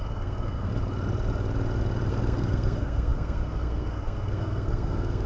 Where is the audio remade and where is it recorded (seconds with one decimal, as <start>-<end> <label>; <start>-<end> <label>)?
0.0-0.7 remade; 0.7-2.1 recorded; 2.1-5.3 remade